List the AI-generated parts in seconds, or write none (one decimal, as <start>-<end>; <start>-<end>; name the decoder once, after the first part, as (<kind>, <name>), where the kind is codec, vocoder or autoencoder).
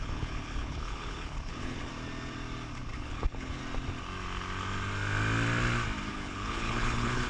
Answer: 0.0-1.9 (codec, HILCodec); 3.0-3.6; 6.1-7.3